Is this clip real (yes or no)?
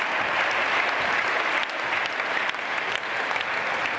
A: yes